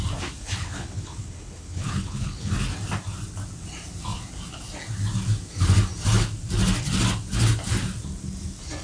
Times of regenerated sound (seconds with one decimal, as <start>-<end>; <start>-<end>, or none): 0.4-2.5